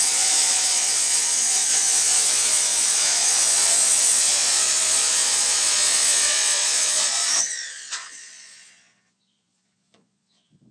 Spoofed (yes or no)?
yes